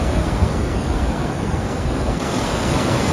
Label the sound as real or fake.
fake